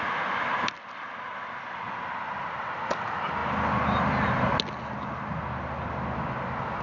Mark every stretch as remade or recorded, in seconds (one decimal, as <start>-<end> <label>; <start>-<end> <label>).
0.0-6.8 recorded